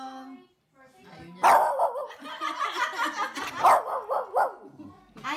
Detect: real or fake real